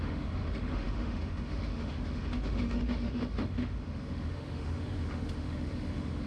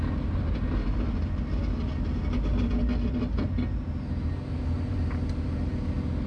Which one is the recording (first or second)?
second